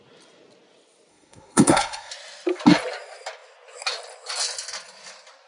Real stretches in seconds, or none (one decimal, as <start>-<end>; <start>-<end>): 0.0-1.1; 2.1-5.5